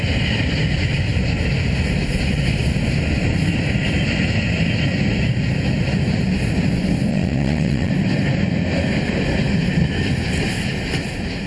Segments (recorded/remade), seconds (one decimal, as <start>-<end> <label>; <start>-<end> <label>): 0.0-7.1 recorded; 7.1-7.9 remade; 7.9-11.5 recorded